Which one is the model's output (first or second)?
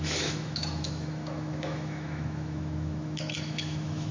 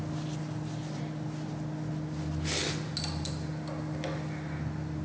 first